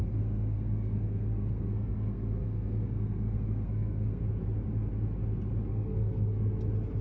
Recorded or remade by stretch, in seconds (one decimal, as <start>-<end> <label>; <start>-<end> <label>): 0.0-4.2 remade; 4.2-5.7 recorded; 5.7-6.4 remade; 6.4-7.0 recorded